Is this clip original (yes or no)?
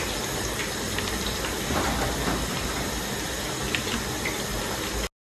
yes